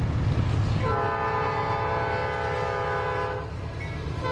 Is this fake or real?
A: real